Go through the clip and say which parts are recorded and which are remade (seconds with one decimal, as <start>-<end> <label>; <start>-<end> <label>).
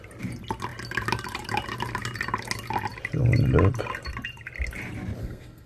0.0-5.2 recorded; 5.2-5.7 remade